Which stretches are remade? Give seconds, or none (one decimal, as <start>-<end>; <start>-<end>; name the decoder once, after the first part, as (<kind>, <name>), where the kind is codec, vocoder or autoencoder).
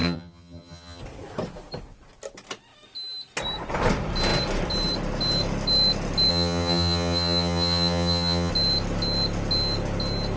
0.0-1.0 (vocoder, HiFi-GAN); 6.3-8.5